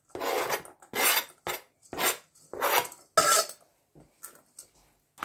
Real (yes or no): yes